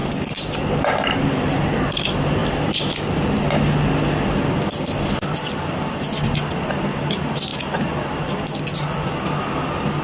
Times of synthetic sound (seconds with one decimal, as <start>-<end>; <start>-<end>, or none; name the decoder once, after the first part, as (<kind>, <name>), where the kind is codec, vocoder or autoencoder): 0.0-1.7 (vocoder, BigVGAN v2)